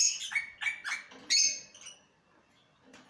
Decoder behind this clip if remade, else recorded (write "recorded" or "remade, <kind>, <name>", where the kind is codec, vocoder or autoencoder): recorded